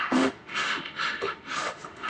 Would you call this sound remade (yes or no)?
yes